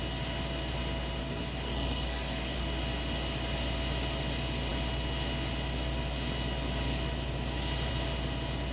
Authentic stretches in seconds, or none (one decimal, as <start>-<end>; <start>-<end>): 0.0-1.2; 2.6-8.7